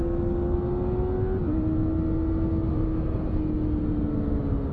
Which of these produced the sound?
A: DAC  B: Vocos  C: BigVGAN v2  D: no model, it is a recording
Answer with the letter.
D